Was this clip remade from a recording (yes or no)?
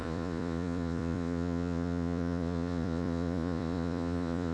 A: yes